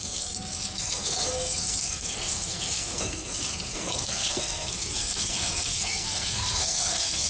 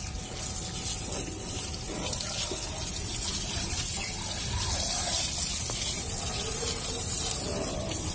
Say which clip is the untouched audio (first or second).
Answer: second